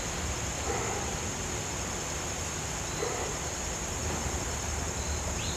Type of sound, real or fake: real